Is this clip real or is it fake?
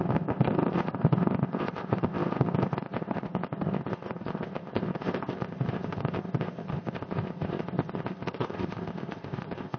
fake